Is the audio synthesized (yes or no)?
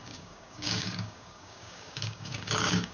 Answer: yes